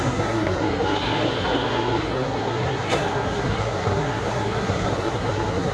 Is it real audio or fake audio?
fake